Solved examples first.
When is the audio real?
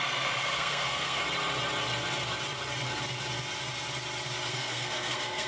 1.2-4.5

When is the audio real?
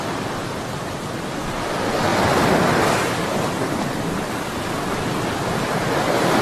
0.0-6.4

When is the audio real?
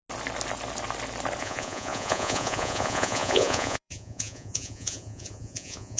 0.0-1.4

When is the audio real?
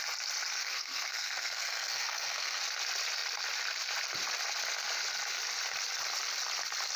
0.0-0.5; 2.6-7.0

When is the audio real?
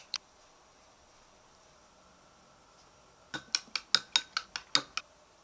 1.8-5.0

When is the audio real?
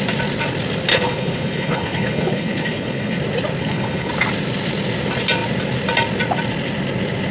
0.0-0.9; 3.2-3.6; 4.1-7.3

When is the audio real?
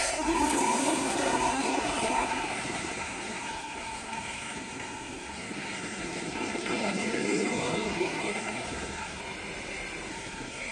9.2-10.1